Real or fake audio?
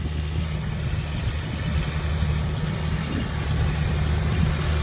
real